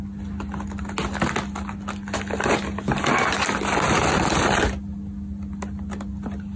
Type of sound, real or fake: real